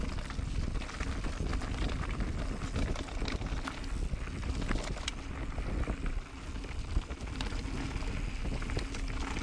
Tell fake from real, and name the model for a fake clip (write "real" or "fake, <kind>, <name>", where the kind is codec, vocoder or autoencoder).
real